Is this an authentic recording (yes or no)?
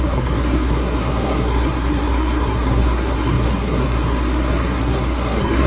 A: no